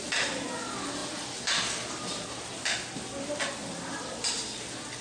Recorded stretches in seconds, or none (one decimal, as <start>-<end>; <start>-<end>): 0.0-5.0